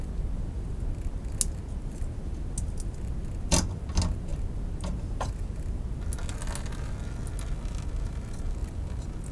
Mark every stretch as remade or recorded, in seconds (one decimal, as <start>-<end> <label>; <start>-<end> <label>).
0.0-9.3 recorded